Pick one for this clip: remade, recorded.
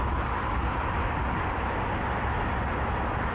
recorded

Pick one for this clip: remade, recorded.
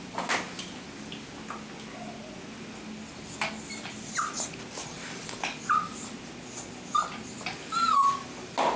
recorded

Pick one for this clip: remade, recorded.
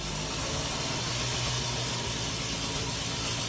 recorded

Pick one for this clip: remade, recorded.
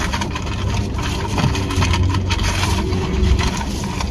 recorded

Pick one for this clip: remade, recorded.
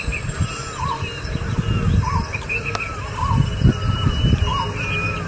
recorded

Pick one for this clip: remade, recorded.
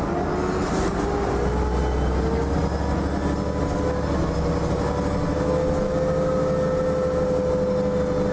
recorded